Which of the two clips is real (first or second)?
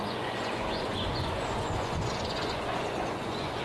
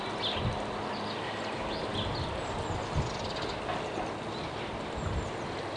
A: second